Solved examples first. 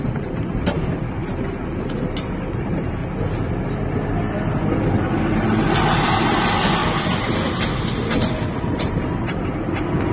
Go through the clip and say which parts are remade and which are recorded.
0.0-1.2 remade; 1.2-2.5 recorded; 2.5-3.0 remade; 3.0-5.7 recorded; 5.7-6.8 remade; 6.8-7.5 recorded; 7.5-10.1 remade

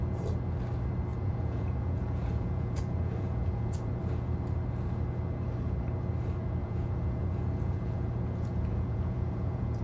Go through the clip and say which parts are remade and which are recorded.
0.0-1.1 recorded; 1.1-4.0 remade; 4.0-6.6 recorded; 6.6-9.8 remade

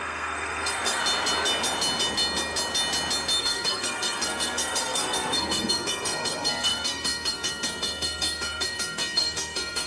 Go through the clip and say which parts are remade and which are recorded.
0.0-1.0 remade; 1.0-3.4 recorded; 3.4-9.9 remade

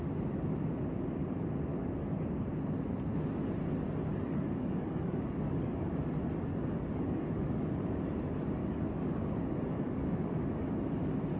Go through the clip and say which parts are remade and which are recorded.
0.0-1.7 recorded; 1.7-2.2 remade; 2.2-4.1 recorded; 4.1-5.9 remade; 5.9-6.5 recorded; 6.5-7.8 remade; 7.8-8.6 recorded; 8.6-10.7 remade; 10.7-11.4 recorded

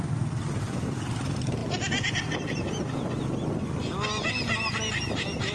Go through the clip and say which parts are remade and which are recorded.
0.0-5.5 recorded